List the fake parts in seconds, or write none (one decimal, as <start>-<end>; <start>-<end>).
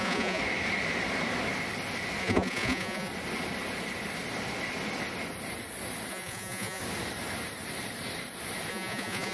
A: 0.0-0.4; 2.2-3.1; 6.1-6.8; 8.7-9.3